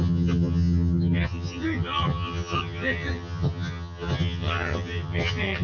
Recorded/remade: remade